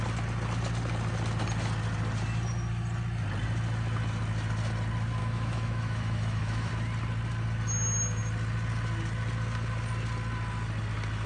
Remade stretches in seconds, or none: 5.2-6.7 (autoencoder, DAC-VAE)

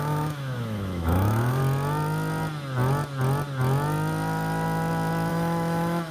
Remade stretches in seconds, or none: 0.0-1.6 (autoencoder, DAC-VAE); 5.3-6.1